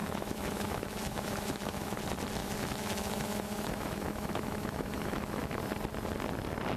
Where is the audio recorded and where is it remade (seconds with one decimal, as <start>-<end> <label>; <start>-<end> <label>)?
0.0-2.0 remade; 2.0-2.4 recorded; 2.4-5.6 remade; 5.6-6.8 recorded